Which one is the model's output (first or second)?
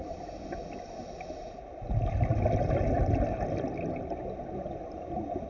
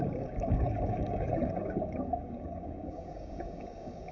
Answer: second